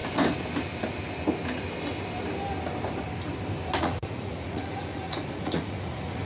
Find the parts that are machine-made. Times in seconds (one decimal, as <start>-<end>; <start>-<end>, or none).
3.8-6.3